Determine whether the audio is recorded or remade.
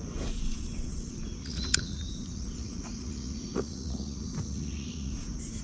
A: remade